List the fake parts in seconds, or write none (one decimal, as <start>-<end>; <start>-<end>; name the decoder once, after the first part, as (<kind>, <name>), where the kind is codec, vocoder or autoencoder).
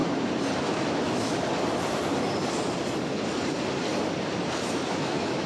0.6-1.3 (autoencoder, DAC-VAE); 4.6-5.5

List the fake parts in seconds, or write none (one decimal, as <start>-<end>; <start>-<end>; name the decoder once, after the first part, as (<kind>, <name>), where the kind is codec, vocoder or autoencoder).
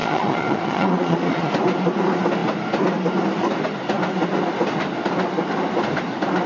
0.0-1.5 (vocoder, Vocos)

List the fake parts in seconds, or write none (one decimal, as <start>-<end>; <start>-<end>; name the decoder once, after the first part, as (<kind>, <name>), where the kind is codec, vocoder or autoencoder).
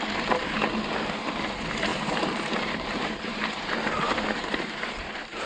1.9-5.5 (vocoder, BigVGAN v2)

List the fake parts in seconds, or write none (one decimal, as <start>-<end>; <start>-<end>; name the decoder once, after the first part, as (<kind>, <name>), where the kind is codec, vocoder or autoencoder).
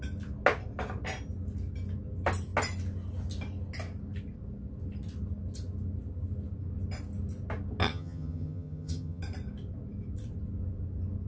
7.8-9.2 (vocoder, HiFi-GAN)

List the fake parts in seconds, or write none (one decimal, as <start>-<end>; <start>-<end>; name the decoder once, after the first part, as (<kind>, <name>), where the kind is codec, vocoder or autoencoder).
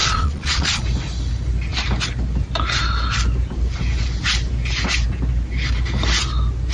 0.0-0.8 (vocoder, Vocos)